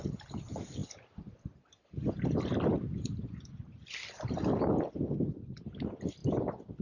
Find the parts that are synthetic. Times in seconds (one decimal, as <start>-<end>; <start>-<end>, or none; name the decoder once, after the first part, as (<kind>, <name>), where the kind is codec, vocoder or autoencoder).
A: none